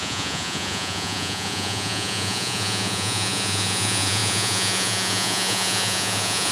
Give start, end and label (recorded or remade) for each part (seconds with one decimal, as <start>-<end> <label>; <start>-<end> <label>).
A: 0.0-6.5 remade